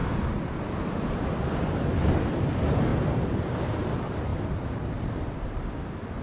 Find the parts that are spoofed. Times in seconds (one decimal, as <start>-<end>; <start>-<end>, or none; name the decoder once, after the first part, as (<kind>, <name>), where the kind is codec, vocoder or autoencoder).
none